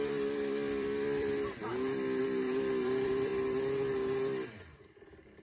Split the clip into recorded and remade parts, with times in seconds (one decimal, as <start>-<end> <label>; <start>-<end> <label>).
0.0-1.7 remade; 1.7-2.2 recorded; 2.2-3.3 remade; 3.3-4.9 recorded; 4.9-5.4 remade